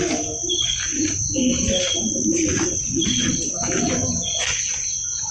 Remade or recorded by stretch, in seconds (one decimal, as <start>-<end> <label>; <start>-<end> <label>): 0.0-0.9 recorded; 0.9-4.1 remade; 4.1-5.3 recorded